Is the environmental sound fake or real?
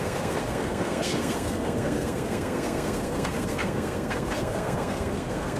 fake